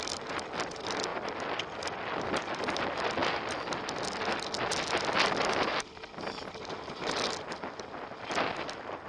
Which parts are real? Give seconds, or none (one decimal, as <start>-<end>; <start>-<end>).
0.0-9.1